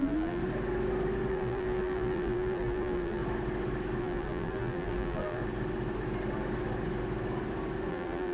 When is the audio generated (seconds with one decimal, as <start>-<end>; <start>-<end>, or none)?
0.0-0.4; 1.3-3.2; 4.0-5.4; 7.9-8.3